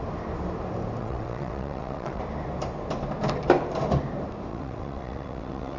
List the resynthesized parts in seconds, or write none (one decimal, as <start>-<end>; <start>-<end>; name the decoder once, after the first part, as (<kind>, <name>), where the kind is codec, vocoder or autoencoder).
1.0-2.2 (vocoder, WaveNeXt); 4.5-5.8